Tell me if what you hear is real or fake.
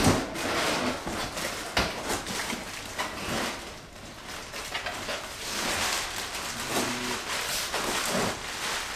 real